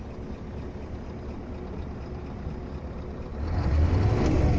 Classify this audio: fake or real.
real